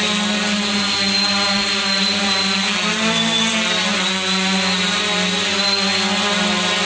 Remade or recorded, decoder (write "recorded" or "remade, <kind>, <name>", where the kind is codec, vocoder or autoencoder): recorded